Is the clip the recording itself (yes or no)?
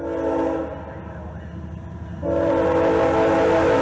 yes